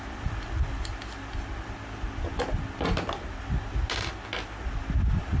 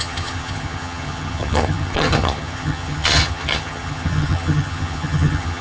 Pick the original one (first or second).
first